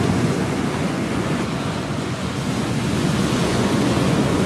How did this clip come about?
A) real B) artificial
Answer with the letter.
B